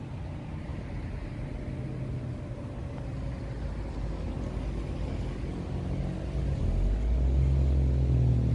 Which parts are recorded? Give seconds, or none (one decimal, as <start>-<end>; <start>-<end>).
0.0-8.5